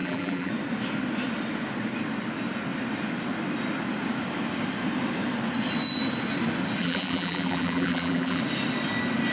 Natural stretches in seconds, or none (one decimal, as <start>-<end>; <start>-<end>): 0.5-6.8; 8.4-9.3